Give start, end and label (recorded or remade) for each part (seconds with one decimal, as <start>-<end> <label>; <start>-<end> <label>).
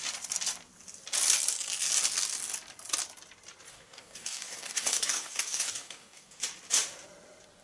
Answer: 0.0-3.7 recorded; 3.7-6.4 remade; 6.4-7.6 recorded